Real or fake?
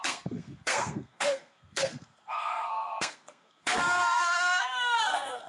fake